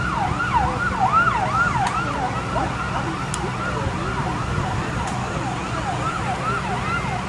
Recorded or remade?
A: recorded